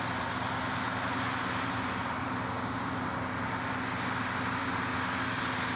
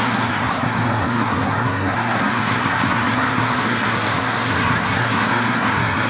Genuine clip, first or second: first